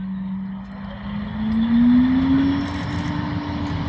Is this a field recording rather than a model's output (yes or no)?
yes